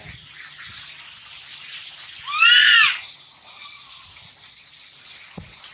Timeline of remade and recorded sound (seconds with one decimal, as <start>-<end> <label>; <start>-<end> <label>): 0.0-1.5 recorded; 1.5-2.4 remade; 2.4-5.7 recorded